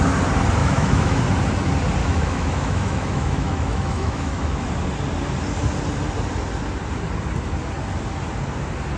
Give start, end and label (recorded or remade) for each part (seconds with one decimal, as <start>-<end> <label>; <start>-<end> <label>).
0.0-0.6 recorded; 0.6-1.2 remade; 1.2-2.0 recorded; 2.0-4.7 remade; 4.7-9.0 recorded